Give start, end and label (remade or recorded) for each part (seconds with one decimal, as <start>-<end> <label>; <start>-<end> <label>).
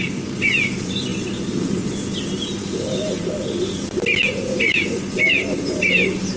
0.0-6.4 recorded